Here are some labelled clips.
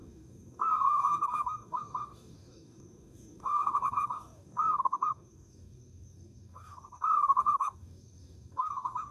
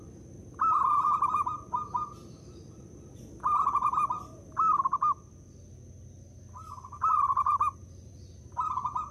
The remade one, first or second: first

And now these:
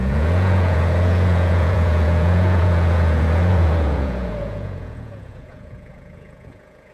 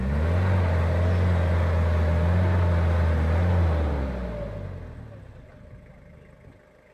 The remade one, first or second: first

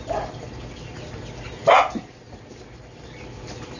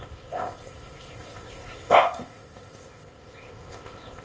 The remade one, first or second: second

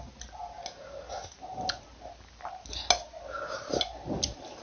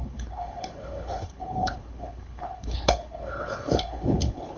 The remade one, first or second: second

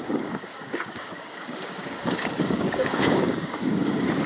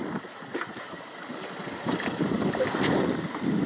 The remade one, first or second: first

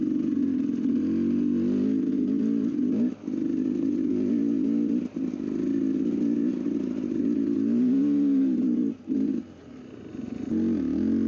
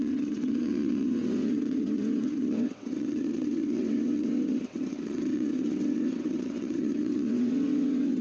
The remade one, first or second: second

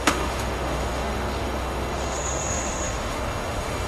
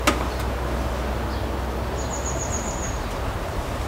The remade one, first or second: first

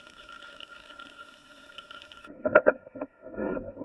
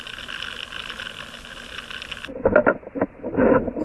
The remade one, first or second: first